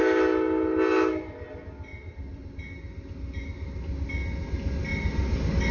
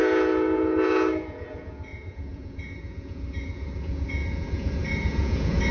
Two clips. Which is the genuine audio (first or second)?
first